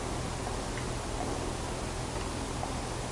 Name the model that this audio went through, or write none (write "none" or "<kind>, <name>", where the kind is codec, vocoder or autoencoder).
none